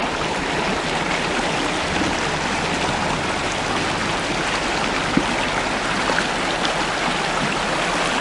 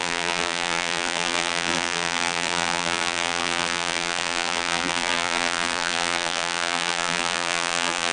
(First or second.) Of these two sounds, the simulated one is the second